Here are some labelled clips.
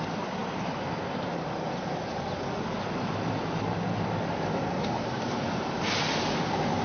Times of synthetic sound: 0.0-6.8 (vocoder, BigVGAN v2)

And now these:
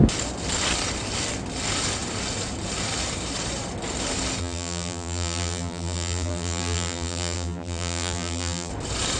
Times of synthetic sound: 4.4-8.7 (vocoder, BigVGAN v2)

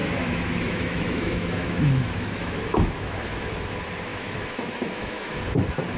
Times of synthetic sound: 0.0-3.5 (autoencoder, DAC-VAE); 4.1-5.4

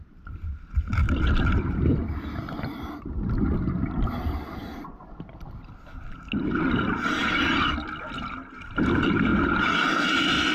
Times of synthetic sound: none

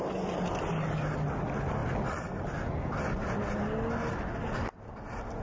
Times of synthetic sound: none

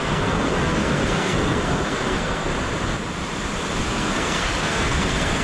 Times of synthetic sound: 0.0-2.5 (codec, SNAC); 3.8-5.4